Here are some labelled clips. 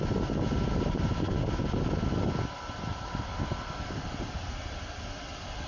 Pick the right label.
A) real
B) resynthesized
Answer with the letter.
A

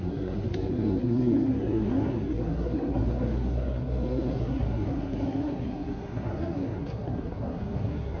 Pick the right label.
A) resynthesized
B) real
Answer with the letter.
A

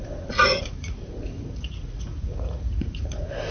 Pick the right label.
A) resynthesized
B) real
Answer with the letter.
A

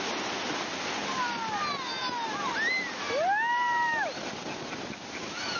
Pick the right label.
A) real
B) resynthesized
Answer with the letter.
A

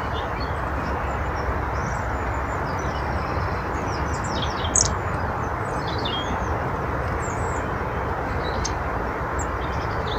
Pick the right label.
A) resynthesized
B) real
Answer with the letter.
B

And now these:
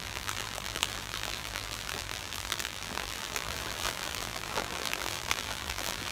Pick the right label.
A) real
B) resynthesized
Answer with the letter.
B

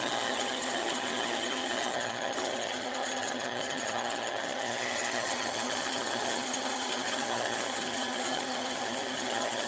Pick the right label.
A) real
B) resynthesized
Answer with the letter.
B